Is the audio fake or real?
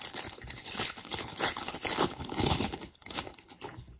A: fake